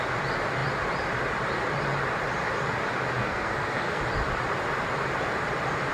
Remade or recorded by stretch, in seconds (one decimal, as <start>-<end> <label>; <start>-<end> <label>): 0.0-3.2 recorded; 3.2-4.0 remade; 4.0-5.9 recorded